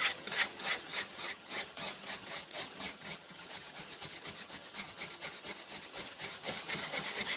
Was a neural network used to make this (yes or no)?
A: yes